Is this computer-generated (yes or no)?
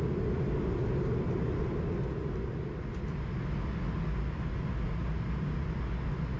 no